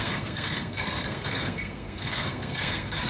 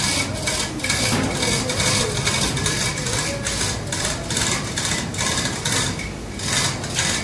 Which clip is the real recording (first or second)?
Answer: second